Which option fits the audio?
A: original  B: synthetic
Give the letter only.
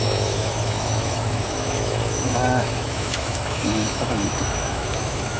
B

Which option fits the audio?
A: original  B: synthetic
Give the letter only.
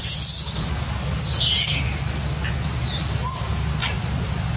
A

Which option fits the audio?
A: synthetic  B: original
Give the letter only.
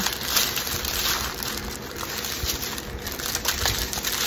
B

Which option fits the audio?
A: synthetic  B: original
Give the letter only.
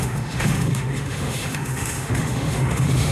A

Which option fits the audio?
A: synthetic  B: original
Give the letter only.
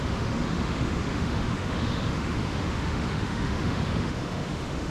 A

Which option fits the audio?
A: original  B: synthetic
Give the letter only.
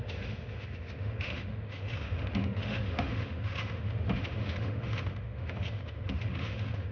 B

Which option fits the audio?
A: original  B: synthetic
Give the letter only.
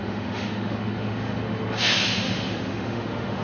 B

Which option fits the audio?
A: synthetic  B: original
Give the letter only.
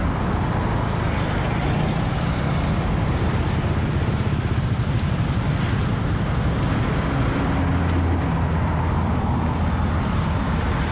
B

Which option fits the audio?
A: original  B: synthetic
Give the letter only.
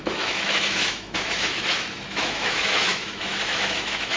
B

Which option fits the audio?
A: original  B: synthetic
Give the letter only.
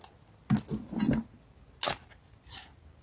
A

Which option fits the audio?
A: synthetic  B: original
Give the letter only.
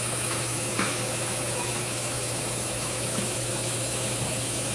A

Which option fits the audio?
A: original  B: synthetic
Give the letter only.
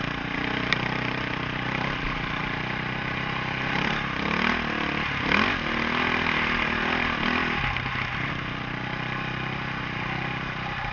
A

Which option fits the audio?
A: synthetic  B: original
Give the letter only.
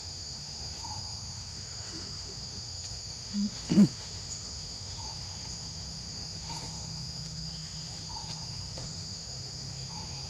A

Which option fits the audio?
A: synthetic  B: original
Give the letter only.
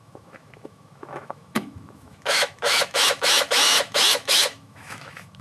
A